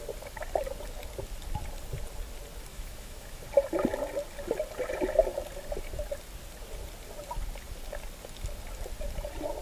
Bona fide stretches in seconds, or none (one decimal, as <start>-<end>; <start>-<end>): 0.0-2.7; 3.4-9.6